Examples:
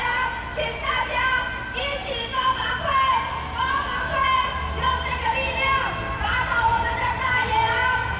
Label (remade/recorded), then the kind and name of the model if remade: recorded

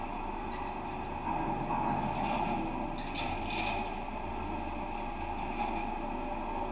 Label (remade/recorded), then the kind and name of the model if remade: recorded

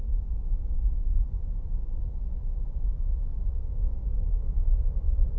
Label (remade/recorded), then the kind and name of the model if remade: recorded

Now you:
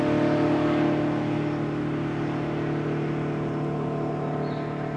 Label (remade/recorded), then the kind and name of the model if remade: recorded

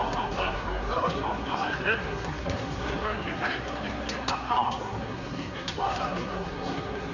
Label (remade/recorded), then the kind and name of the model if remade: remade, codec, SNAC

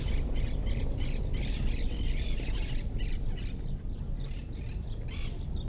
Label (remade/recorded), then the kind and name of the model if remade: recorded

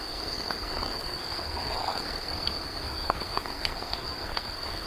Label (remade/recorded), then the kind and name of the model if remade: remade, codec, SNAC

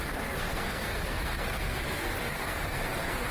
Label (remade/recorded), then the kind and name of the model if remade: remade, codec, SNAC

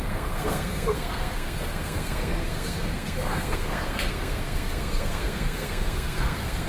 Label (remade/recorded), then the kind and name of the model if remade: remade, codec, SNAC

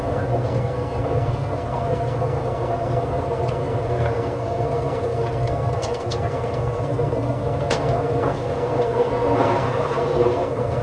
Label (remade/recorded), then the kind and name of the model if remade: remade, codec, SNAC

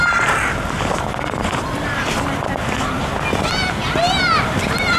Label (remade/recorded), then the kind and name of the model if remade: recorded